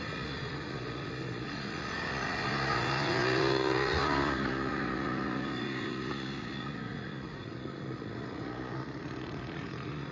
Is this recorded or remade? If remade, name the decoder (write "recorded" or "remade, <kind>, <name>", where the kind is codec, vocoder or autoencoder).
remade, vocoder, Vocos